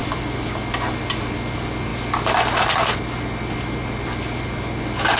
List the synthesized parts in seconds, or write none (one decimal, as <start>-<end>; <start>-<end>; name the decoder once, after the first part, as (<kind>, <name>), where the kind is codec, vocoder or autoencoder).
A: none